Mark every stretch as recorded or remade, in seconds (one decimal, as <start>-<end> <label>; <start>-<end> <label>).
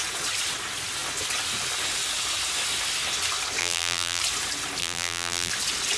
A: 0.0-3.6 recorded; 3.6-4.2 remade; 4.2-4.8 recorded; 4.8-5.5 remade; 5.5-6.0 recorded